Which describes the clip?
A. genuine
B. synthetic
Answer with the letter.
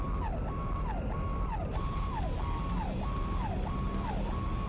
A